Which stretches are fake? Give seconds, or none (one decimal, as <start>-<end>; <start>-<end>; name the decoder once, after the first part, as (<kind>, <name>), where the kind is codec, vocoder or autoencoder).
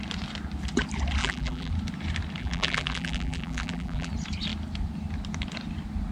1.2-1.7 (vocoder, BigVGAN v2); 2.4-4.1